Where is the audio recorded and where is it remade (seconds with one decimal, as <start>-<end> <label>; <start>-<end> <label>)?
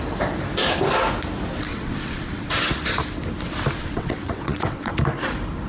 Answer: 0.0-1.7 recorded; 1.7-2.5 remade; 2.5-3.8 recorded; 3.8-4.9 remade; 4.9-5.7 recorded